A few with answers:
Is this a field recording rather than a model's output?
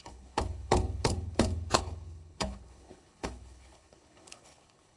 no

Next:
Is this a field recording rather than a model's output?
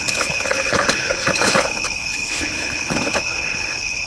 no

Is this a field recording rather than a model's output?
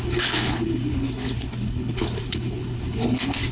no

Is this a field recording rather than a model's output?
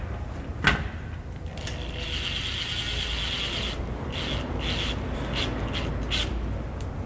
yes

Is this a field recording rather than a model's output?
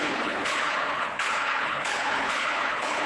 no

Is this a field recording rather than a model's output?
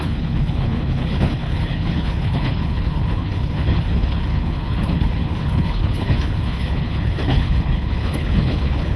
no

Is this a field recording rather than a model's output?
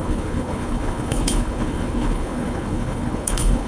no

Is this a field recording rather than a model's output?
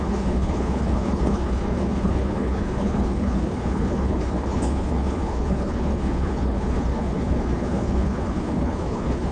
no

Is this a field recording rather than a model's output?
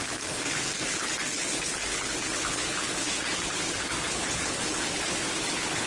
no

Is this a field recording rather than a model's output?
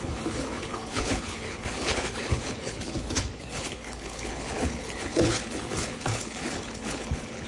no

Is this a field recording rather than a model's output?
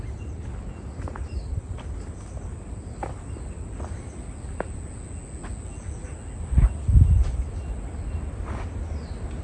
yes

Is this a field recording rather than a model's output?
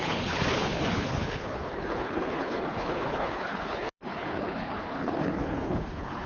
no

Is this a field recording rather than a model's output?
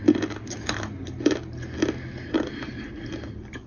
yes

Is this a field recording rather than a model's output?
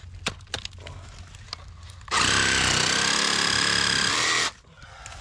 yes